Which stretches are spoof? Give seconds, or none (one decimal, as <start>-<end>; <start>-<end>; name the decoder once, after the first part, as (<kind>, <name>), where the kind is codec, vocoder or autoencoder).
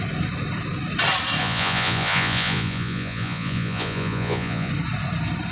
1.4-4.7 (vocoder, Vocos)